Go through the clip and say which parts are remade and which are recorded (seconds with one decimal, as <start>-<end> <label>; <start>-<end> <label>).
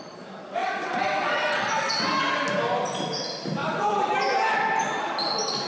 0.0-0.6 recorded; 0.6-2.2 remade; 2.2-3.6 recorded; 3.6-4.1 remade; 4.1-5.7 recorded